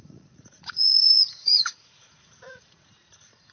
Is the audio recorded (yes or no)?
no